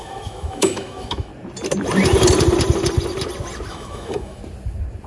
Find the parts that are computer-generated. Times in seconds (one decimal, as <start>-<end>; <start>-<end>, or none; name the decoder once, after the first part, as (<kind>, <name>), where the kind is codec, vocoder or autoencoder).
0.0-1.3 (autoencoder, DAC-VAE); 3.7-4.4